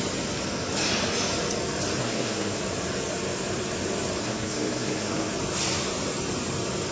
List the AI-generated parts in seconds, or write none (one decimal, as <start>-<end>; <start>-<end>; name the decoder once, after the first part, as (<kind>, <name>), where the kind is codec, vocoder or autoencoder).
2.0-2.6 (codec, SNAC); 4.2-5.3